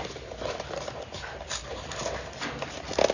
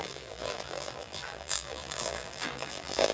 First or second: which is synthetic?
second